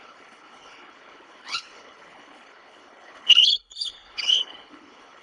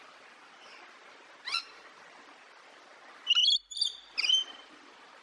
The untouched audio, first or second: second